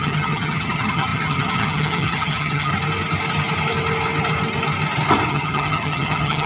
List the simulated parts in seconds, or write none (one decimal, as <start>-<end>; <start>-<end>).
0.0-2.7; 5.3-6.5